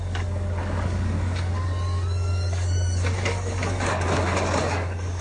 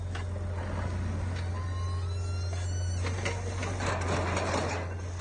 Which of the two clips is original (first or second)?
second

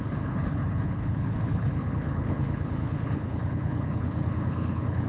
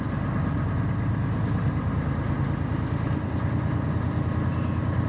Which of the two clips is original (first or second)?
second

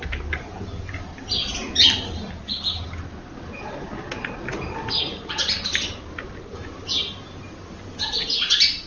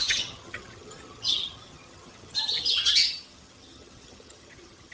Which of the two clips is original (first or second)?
first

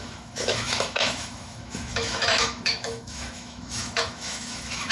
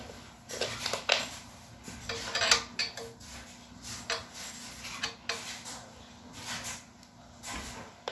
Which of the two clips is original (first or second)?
second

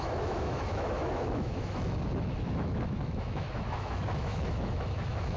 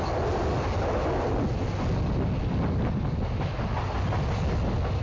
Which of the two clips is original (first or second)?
second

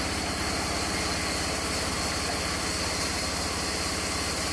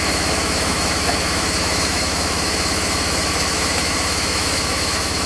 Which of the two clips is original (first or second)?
first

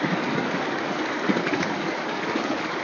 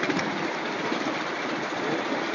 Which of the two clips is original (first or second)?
second